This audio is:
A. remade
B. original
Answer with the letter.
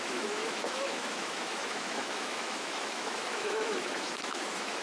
A